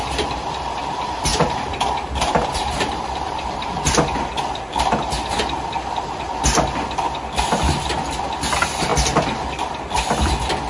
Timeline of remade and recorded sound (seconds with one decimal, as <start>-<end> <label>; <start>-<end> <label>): 0.0-1.3 recorded; 1.3-3.9 remade; 3.9-10.7 recorded